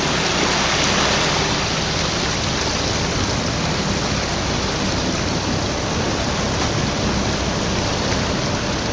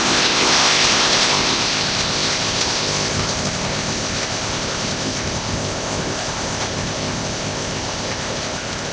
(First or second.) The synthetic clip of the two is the second